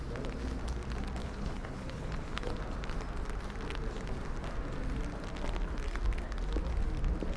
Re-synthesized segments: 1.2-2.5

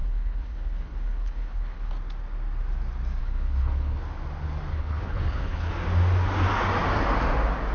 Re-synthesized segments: 0.0-1.9; 3.2-4.0; 4.7-5.7

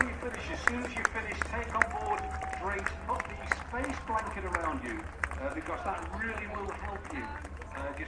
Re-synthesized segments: none

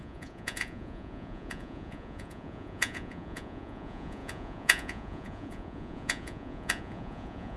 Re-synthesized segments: 0.0-7.6

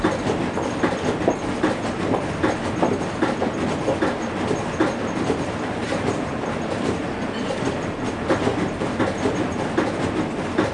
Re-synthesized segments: 5.8-9.0

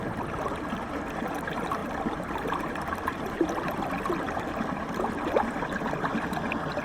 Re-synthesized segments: 1.8-5.9

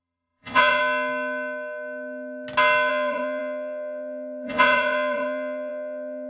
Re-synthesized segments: 0.0-0.8; 2.9-6.3